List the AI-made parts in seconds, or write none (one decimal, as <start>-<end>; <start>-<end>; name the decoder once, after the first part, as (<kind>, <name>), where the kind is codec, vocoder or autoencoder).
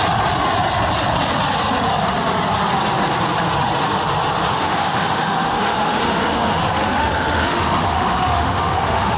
4.5-6.6 (autoencoder, DAC-VAE); 7.0-9.2